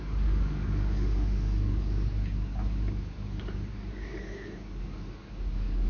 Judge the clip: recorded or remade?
remade